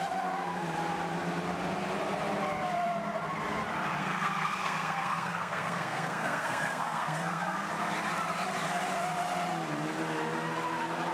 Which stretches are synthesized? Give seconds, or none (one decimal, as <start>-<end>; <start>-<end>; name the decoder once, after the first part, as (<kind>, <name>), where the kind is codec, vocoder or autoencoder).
4.0-7.7 (codec, SNAC)